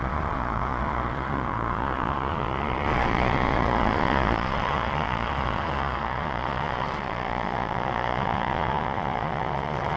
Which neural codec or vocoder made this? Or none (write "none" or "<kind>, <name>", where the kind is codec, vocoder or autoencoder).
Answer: vocoder, Vocos